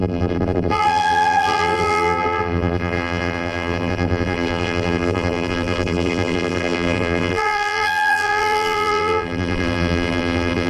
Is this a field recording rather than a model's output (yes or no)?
no